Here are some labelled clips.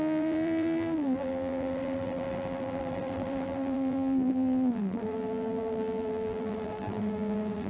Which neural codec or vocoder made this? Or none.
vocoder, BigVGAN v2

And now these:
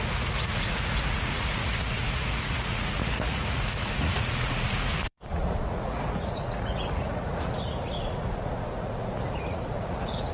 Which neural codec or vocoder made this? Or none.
vocoder, Vocos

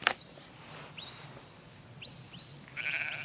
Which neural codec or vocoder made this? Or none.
none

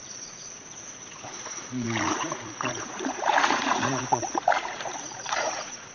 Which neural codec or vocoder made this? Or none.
vocoder, Vocos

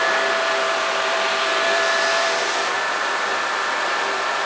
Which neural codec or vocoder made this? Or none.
vocoder, BigVGAN v2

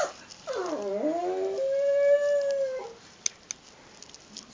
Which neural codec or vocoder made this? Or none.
none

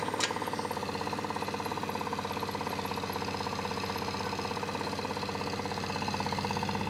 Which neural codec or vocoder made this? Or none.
none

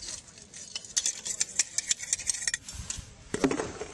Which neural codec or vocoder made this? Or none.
none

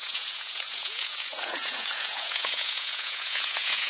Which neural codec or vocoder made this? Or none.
vocoder, Vocos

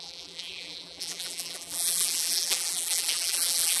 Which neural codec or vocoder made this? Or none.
vocoder, BigVGAN v2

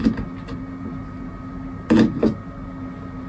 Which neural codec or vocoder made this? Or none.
none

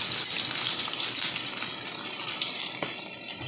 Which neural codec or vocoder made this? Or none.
none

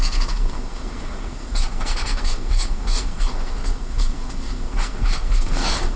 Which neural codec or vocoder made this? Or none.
codec, SNAC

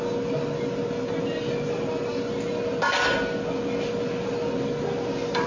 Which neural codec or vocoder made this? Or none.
none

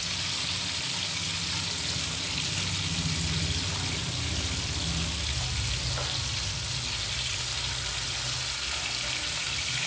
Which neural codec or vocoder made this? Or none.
none